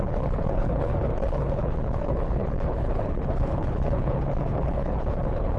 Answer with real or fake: fake